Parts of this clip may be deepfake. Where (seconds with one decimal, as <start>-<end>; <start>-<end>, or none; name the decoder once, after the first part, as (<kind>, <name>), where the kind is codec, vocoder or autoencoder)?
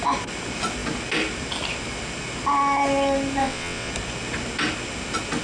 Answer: 3.4-3.9 (vocoder, WaveNeXt)